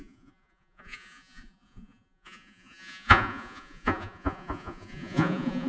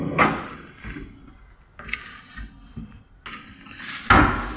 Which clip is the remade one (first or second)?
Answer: first